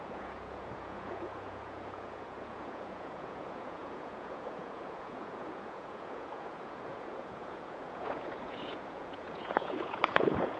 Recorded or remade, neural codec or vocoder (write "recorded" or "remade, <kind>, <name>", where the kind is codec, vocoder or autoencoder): remade, vocoder, Vocos